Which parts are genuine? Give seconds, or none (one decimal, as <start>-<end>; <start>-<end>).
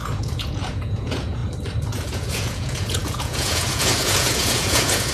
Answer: 1.4-1.9